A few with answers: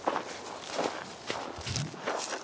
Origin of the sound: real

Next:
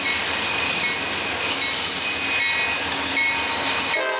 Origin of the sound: real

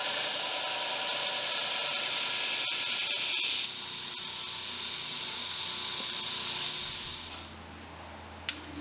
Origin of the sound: real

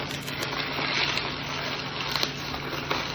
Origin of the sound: real